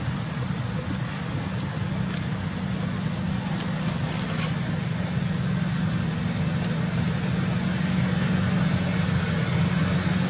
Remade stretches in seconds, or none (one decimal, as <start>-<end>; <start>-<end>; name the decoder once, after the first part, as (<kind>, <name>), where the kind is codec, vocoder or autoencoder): none